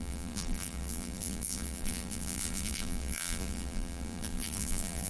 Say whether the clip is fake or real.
fake